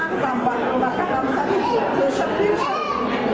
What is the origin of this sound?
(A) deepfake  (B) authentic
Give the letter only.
B